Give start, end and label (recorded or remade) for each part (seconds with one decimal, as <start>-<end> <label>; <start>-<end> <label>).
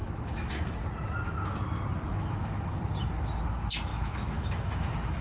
0.0-0.5 remade; 0.5-2.1 recorded; 2.1-2.8 remade; 2.8-3.9 recorded; 3.9-5.2 remade